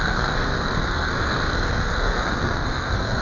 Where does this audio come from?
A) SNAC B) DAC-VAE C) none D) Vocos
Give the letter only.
A